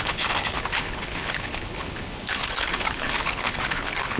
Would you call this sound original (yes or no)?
no